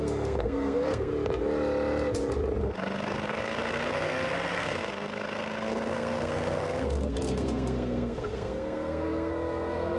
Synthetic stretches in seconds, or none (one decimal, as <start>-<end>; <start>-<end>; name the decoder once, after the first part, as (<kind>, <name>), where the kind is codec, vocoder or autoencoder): 0.0-1.1 (codec, SNAC); 2.6-10.0